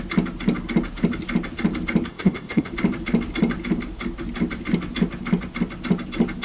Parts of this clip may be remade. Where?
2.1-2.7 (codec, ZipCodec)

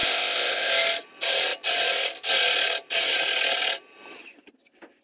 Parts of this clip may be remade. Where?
0.0-0.7 (codec, ZipCodec)

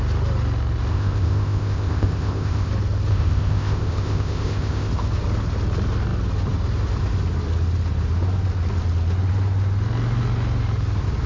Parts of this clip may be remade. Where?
0.9-2.7 (codec, ZipCodec); 3.1-4.9

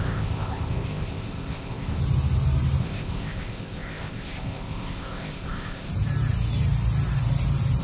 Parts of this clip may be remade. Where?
0.0-2.0 (codec, ZipCodec); 2.8-5.9